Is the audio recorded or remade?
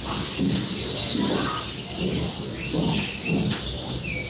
recorded